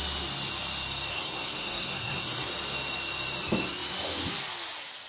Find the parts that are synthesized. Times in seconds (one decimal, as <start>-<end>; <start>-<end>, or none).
1.1-2.5